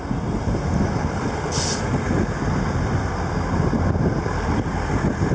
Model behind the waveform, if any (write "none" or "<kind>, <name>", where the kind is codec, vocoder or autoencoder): none